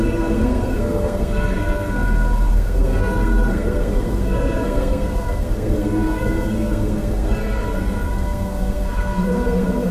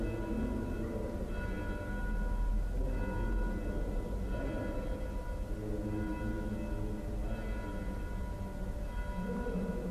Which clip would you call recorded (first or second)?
second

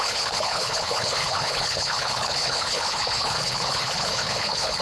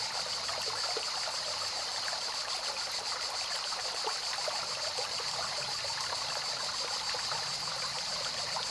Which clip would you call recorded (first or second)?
second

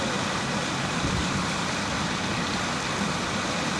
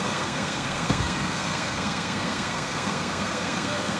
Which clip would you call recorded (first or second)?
first